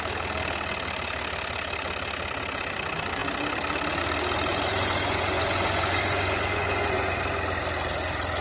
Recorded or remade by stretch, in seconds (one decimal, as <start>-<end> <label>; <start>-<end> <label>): 0.0-4.5 recorded; 4.5-7.2 remade; 7.2-8.4 recorded